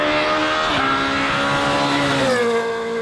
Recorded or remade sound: recorded